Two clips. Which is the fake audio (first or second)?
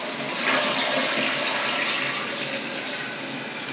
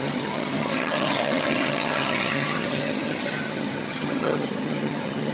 second